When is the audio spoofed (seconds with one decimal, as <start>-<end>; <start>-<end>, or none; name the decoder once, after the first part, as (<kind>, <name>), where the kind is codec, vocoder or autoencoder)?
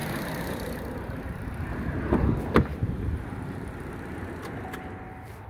0.0-2.0 (vocoder, BigVGAN v2); 2.7-4.3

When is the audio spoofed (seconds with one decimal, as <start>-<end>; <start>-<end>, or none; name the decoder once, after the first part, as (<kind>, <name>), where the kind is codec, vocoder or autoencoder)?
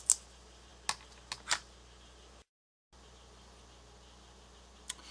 none